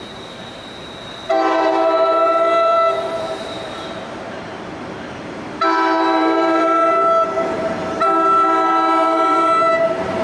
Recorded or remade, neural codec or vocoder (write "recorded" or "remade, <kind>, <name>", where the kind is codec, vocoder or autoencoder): remade, vocoder, BigVGAN v2